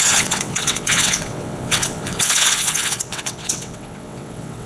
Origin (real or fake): fake